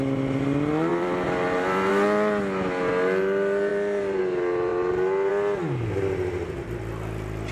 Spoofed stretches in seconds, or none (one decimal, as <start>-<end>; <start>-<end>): 0.9-1.9; 3.7-4.2